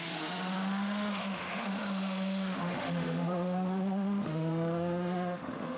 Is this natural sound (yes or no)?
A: no